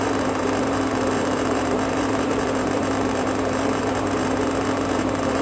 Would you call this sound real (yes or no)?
no